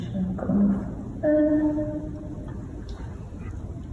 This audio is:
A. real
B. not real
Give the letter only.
A